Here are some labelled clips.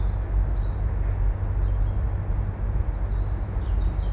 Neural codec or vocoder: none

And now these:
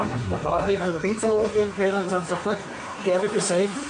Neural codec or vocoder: codec, SNAC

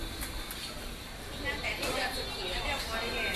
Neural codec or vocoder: none